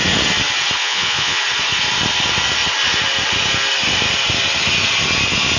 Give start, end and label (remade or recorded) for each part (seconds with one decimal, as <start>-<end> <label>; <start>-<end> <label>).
0.0-0.8 recorded; 0.8-1.4 remade; 1.4-5.6 recorded